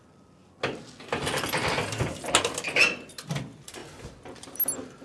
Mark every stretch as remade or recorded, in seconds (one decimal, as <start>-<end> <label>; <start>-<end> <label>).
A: 0.0-5.0 recorded